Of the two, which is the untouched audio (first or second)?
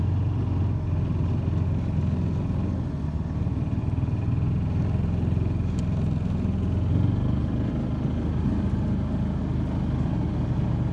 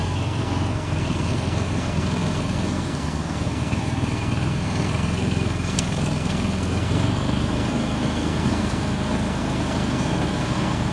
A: first